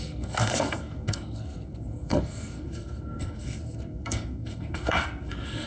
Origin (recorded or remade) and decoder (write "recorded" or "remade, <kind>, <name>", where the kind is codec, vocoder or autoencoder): remade, codec, SNAC